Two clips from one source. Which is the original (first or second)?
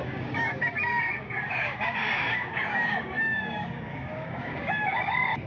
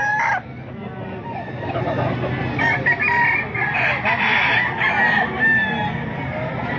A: second